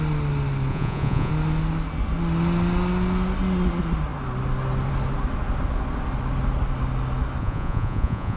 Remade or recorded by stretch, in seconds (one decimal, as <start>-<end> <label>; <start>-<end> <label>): 0.0-0.7 recorded; 0.7-1.3 remade; 1.3-7.4 recorded; 7.4-8.4 remade